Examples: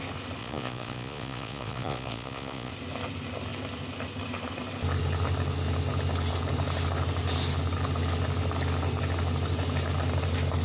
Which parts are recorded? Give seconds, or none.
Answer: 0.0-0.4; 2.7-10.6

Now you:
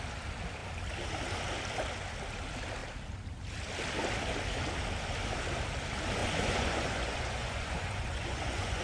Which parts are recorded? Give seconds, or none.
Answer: 0.0-6.2

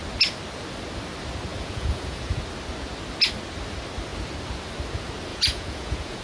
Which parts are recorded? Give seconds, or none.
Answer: 0.0-1.5; 2.4-5.3

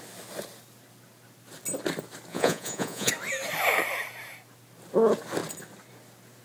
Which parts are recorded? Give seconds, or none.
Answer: 0.0-2.3; 3.1-6.4

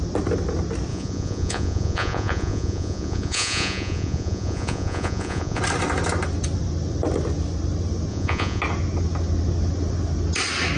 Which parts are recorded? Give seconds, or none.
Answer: 0.0-0.9; 5.6-8.1; 8.6-10.8